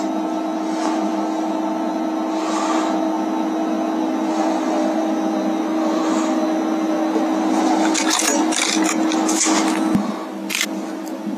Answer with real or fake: real